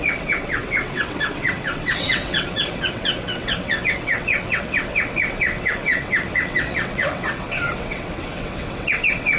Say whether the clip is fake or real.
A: fake